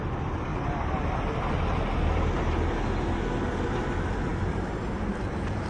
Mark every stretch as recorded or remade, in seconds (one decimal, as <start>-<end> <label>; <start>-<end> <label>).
0.0-5.7 recorded